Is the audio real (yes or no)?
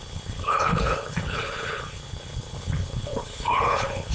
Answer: no